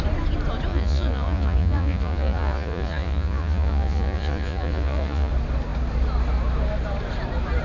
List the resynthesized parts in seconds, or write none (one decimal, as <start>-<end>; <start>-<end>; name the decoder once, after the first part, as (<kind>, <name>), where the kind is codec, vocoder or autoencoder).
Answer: 0.7-5.3 (vocoder, Vocos)